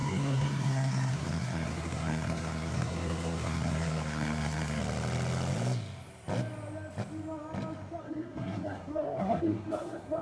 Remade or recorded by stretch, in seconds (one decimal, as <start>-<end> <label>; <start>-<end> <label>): 0.0-4.8 remade; 4.8-8.0 recorded; 8.0-10.2 remade